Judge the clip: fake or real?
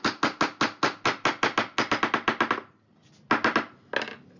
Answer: real